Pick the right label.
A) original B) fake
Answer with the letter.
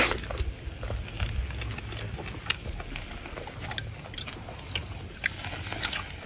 A